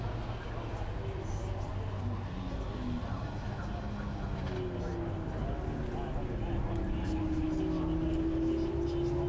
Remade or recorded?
recorded